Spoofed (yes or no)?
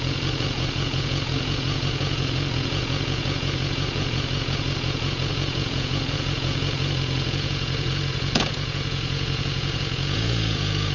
yes